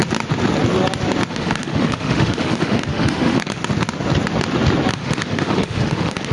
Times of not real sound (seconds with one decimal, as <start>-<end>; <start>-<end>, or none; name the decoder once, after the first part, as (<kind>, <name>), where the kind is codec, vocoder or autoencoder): 1.3-3.6 (autoencoder, DAC-VAE); 4.9-6.3